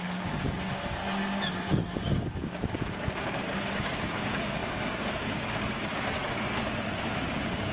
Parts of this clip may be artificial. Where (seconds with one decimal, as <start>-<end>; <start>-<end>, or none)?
0.0-1.0; 1.5-6.2; 7.1-7.7